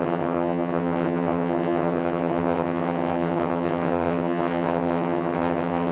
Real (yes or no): no